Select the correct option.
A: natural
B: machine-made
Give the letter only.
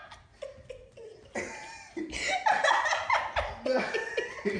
A